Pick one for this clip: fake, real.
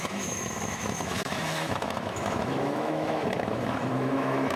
fake